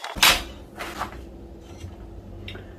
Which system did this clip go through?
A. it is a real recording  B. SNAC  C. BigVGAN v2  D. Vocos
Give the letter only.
A